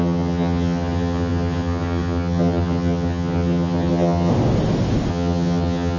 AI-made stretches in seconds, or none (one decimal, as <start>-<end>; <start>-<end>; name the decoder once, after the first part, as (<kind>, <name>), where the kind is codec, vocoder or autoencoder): 0.0-4.3 (vocoder, HiFi-GAN); 5.1-6.0